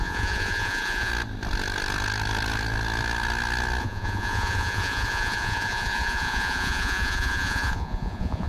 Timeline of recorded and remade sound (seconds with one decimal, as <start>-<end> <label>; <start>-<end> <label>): 0.0-1.1 remade; 1.1-3.8 recorded; 3.8-8.5 remade